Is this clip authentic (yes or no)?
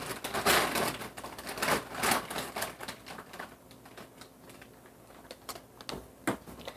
yes